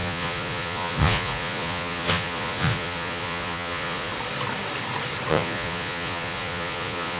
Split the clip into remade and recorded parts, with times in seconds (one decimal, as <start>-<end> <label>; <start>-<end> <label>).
0.0-4.1 remade; 4.1-5.3 recorded; 5.3-7.2 remade